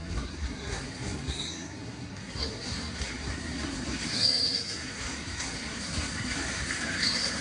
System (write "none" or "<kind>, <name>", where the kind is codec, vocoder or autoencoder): codec, SNAC